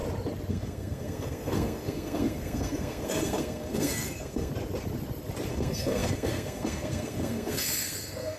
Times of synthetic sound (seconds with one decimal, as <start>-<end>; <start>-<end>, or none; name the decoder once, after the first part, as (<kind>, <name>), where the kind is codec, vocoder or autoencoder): 0.5-4.5 (codec, SNAC); 5.5-8.4